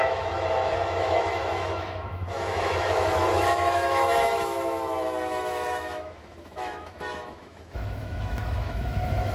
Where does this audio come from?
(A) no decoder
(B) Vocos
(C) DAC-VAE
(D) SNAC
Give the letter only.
C